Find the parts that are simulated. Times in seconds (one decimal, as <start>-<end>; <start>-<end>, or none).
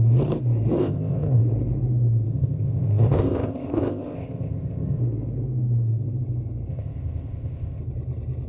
0.8-1.4; 2.3-5.0; 6.7-7.8